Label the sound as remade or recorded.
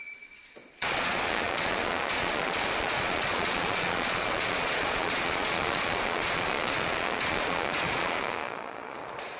remade